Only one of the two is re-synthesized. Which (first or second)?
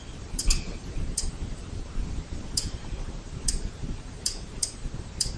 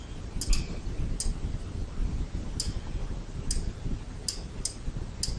first